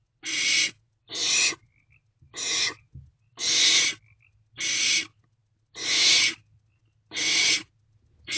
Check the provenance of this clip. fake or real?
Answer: real